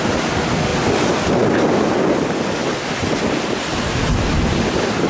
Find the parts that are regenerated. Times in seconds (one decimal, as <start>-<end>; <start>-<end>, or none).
none